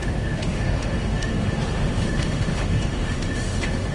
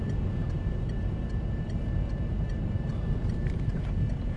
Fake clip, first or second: first